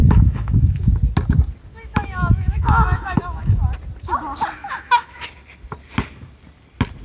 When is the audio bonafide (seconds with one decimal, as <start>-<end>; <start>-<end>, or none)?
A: 0.9-1.7; 3.6-4.6; 5.3-7.0